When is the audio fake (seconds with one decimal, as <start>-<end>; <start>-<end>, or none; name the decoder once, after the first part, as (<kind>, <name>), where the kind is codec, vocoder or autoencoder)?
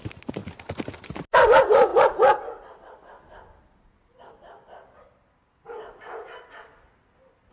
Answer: none